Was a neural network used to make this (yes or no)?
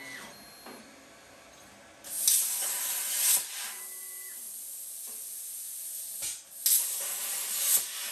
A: no